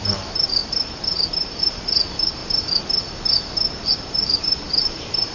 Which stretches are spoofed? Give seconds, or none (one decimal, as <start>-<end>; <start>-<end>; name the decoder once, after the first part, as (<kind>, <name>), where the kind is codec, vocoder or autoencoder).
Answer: 0.0-0.6 (vocoder, BigVGAN v2); 1.6-2.4; 3.9-5.3